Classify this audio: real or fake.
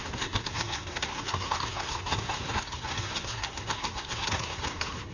fake